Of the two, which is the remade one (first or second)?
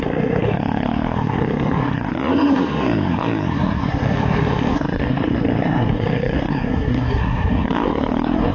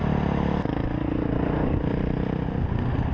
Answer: first